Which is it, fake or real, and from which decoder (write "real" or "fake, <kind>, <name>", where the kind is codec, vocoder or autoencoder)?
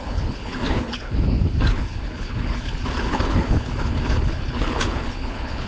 fake, codec, HILCodec